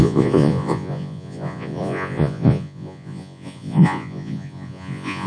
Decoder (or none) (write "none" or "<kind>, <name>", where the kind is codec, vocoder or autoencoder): vocoder, Vocos